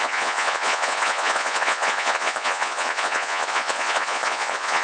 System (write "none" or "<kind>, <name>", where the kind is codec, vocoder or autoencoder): vocoder, Vocos